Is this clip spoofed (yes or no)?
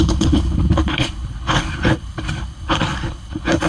yes